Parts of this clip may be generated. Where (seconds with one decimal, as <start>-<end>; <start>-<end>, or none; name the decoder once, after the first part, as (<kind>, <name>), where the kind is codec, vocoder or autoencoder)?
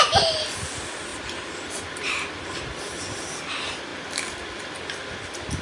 none